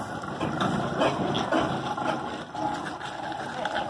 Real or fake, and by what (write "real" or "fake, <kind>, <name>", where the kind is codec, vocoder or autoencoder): real